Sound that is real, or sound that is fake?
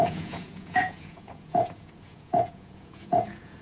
fake